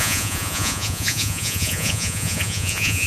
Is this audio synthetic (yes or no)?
yes